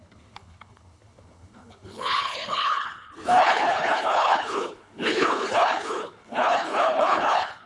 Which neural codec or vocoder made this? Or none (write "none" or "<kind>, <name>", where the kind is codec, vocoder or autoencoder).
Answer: codec, HILCodec